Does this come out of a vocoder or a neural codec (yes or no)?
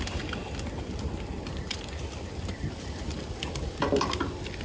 no